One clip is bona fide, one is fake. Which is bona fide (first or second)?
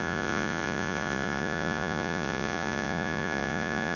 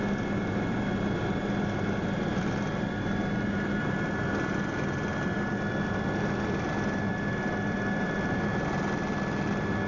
second